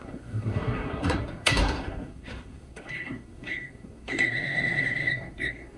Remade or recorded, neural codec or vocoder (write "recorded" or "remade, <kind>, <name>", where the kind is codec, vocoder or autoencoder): remade, codec, SNAC